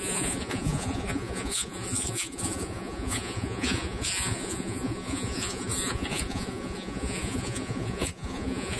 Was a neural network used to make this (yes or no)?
yes